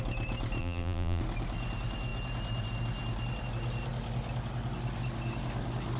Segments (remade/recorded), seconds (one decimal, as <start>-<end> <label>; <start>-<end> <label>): 0.0-0.6 recorded; 0.6-1.2 remade; 1.2-6.0 recorded